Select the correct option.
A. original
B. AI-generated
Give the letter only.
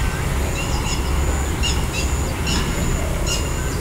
A